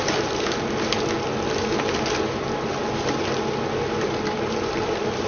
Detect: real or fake real